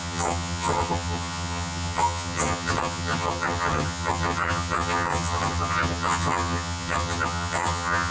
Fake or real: fake